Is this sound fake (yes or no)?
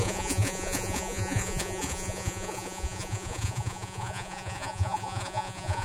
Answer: yes